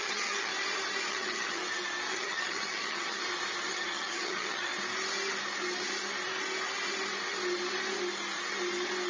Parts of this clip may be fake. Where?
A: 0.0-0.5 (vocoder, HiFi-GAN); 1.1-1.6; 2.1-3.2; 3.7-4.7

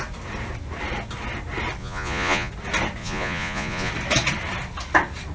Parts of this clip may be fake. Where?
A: 1.8-2.5 (vocoder, Vocos); 3.0-3.9